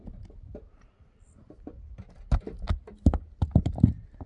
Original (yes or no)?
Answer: yes